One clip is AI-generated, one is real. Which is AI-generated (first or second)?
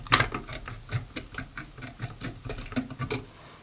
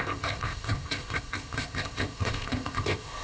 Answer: second